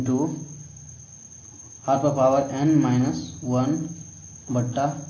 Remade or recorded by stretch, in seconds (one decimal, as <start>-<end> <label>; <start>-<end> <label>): 0.0-5.1 recorded